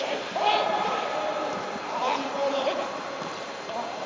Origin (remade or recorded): recorded